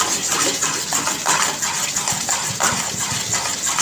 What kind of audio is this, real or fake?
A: real